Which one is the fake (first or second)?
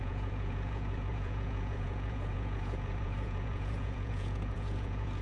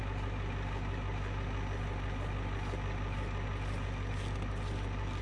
first